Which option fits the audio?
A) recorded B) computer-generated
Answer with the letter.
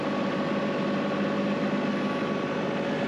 A